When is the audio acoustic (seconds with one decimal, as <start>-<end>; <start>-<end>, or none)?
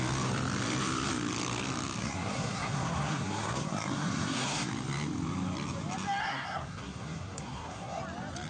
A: 0.0-2.0; 4.7-6.2; 8.0-8.5